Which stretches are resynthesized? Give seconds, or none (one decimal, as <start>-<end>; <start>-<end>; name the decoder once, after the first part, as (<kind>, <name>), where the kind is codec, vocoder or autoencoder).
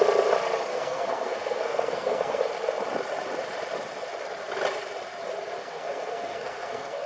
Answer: 0.7-2.4 (codec, SNAC); 5.6-7.1